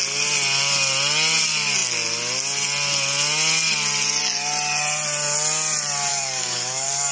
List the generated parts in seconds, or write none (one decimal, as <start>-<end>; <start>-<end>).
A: 6.1-7.1